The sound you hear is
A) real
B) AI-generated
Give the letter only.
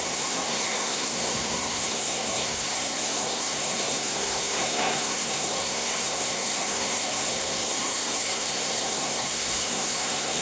B